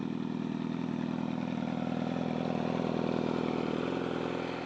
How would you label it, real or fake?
real